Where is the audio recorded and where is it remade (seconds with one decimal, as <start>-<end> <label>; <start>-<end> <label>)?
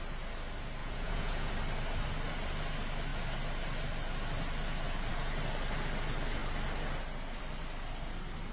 0.0-0.8 recorded; 0.8-1.5 remade; 1.5-8.5 recorded